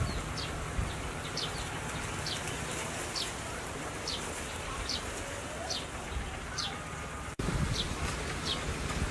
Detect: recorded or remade recorded